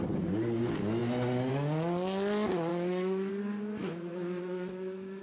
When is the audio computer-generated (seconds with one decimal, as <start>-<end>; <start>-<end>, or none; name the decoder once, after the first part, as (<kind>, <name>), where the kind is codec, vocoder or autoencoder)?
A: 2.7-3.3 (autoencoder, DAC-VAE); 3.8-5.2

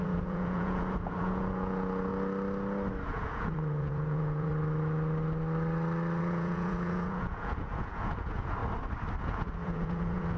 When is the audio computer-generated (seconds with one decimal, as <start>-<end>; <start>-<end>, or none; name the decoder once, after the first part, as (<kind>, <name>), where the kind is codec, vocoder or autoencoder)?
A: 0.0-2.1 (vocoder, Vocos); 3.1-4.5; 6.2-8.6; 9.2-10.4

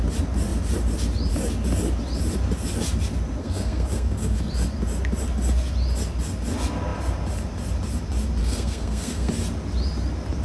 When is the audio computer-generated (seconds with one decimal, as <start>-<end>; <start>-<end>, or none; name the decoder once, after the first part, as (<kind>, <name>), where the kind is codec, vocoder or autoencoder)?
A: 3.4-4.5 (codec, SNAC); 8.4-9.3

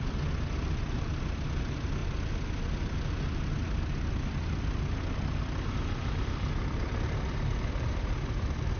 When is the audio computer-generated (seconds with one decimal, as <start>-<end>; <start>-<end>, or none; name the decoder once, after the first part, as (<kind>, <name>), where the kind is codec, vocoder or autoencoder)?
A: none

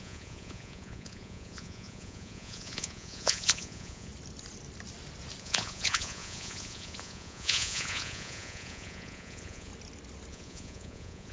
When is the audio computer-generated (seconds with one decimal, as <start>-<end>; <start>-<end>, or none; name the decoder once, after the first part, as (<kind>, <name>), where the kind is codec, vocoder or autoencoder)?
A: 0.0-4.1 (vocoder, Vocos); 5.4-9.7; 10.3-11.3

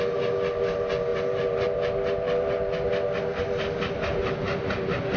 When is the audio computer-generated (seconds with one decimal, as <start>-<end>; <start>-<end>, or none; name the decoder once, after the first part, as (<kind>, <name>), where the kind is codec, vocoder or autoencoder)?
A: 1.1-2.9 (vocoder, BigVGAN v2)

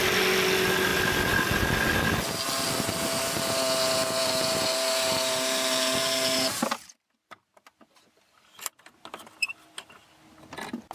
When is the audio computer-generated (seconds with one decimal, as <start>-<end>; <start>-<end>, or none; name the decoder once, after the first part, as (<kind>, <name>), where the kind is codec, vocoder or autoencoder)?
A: none